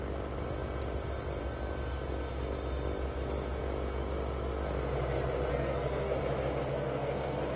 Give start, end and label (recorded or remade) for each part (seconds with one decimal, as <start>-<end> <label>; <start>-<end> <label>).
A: 0.0-5.5 recorded; 5.5-6.2 remade; 6.2-6.7 recorded; 6.7-7.6 remade